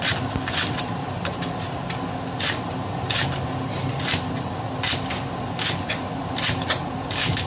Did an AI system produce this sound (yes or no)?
no